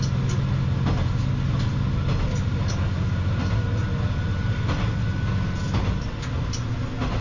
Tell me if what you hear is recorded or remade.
recorded